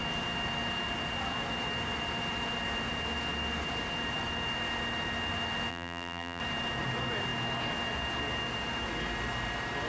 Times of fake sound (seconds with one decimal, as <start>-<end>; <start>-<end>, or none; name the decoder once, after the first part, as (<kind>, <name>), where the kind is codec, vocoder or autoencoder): 5.7-6.4 (vocoder, BigVGAN v2)